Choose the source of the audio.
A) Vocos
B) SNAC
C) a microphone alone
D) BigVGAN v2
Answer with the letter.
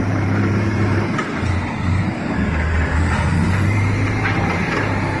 D